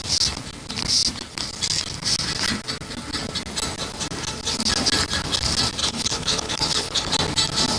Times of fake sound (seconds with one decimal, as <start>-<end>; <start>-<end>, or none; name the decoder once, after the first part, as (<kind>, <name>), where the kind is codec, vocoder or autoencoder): 5.8-7.1 (codec, HILCodec)